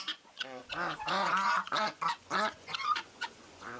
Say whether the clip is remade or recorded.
remade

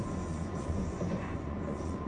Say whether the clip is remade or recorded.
remade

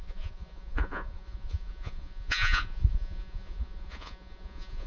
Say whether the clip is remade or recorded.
remade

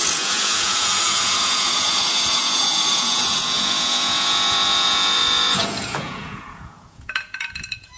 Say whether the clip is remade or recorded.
remade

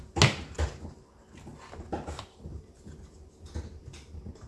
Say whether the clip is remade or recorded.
recorded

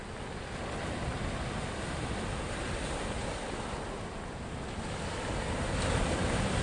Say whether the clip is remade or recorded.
recorded